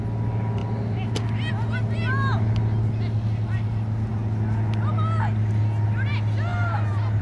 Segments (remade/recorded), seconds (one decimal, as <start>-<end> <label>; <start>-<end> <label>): 0.0-6.5 recorded; 6.5-7.2 remade